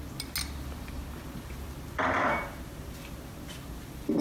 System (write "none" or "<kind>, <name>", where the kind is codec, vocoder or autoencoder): none